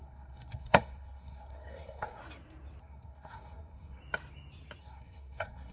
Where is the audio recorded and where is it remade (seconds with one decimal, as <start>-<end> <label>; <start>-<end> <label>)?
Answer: 0.0-2.2 remade; 2.2-2.8 recorded; 2.8-4.0 remade; 4.0-4.8 recorded; 4.8-5.7 remade